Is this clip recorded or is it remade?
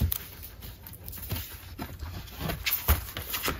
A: recorded